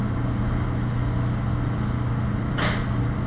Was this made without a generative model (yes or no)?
yes